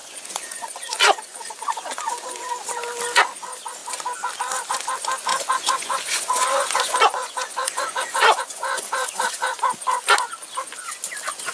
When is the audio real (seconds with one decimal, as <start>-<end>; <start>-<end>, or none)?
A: 2.5-5.3; 9.6-11.5

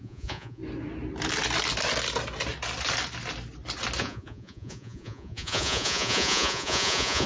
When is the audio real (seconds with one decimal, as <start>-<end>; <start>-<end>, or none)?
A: 0.6-4.0